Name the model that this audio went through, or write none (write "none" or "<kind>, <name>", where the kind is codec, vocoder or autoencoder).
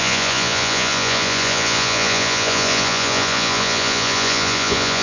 vocoder, Vocos